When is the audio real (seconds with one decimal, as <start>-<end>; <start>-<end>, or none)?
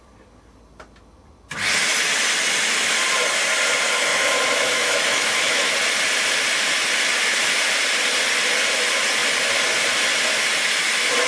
0.0-4.1; 5.7-11.3